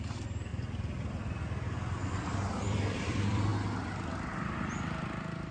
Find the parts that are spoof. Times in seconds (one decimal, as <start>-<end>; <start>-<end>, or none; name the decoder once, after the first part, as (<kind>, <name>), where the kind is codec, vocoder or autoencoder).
0.0-3.5 (vocoder, BigVGAN v2); 4.3-5.5